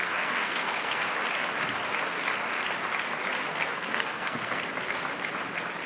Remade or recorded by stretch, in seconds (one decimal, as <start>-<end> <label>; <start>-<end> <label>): 0.0-1.1 remade; 1.1-3.5 recorded; 3.5-4.6 remade; 4.6-5.9 recorded